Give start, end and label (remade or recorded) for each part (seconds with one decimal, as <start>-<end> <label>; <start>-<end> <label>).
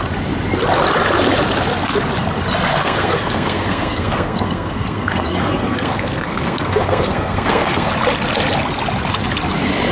0.0-2.7 recorded; 2.7-7.9 remade; 7.9-9.9 recorded